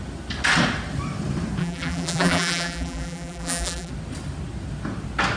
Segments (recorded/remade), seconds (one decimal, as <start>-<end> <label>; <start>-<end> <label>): 0.0-1.6 recorded; 1.6-3.9 remade; 3.9-5.4 recorded

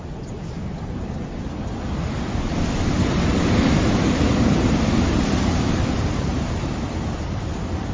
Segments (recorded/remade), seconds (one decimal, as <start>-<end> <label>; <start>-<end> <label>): 0.0-0.6 recorded; 0.6-1.3 remade; 1.3-6.3 recorded; 6.3-6.9 remade; 6.9-7.9 recorded

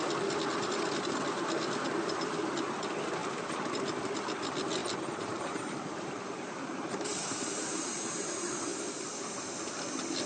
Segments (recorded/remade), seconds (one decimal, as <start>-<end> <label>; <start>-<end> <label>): 0.0-3.2 recorded; 3.2-3.7 remade; 3.7-4.8 recorded; 4.8-8.1 remade; 8.1-10.3 recorded

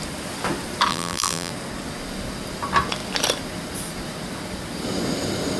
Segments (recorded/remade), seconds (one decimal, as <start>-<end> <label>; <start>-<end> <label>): 0.0-0.9 recorded; 0.9-1.5 remade; 1.5-5.6 recorded

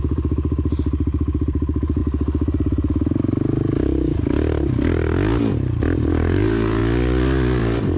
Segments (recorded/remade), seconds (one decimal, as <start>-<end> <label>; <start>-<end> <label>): 0.0-2.0 remade; 2.0-6.1 recorded; 6.1-6.8 remade; 6.8-7.6 recorded; 7.6-8.0 remade

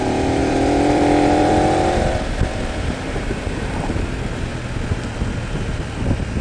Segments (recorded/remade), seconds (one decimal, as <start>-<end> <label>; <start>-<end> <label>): 0.0-4.5 remade; 4.5-6.4 recorded